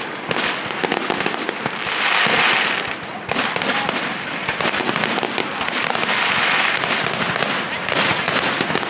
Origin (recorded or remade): recorded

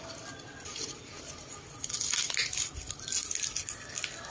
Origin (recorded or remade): recorded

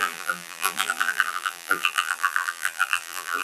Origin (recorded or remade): remade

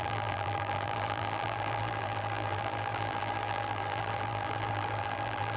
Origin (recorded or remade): remade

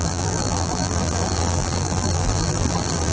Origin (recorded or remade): remade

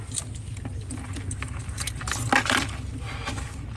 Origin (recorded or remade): recorded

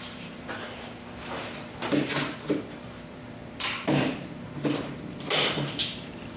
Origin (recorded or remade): remade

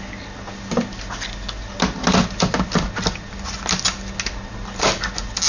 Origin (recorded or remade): recorded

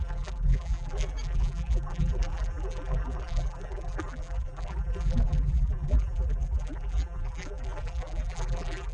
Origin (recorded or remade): remade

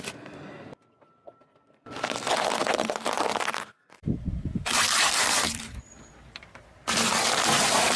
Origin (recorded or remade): remade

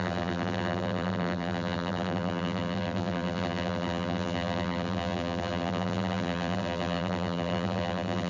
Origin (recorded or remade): remade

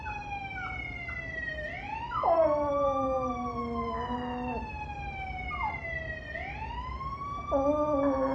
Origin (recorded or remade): remade